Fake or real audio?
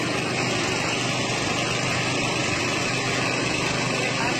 real